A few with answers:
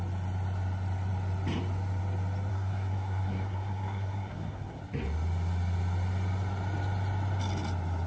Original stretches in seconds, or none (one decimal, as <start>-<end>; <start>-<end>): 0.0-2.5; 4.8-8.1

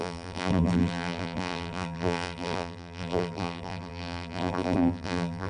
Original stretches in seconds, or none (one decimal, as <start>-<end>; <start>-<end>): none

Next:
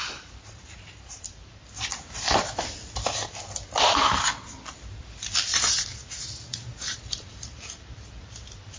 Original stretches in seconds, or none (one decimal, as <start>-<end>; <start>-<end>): 1.9-5.0